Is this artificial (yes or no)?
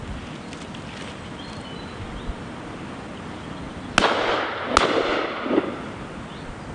no